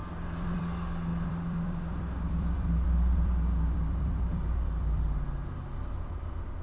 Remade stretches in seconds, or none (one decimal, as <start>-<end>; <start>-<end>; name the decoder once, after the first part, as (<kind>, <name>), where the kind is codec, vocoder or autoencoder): 0.0-0.6 (vocoder, BigVGAN v2); 1.1-5.0